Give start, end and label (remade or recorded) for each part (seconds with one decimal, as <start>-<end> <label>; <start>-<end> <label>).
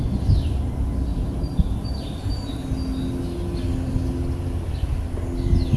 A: 0.0-5.8 recorded